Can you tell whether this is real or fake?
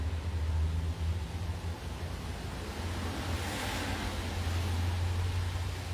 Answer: real